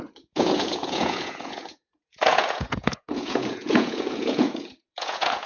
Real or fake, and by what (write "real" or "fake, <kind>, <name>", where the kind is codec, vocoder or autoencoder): fake, vocoder, Vocos